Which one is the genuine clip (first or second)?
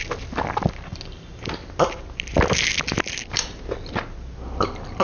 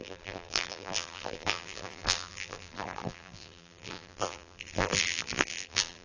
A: first